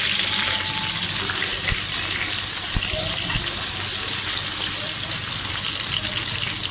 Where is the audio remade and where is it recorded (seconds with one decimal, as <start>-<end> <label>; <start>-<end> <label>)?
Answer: 0.0-6.7 recorded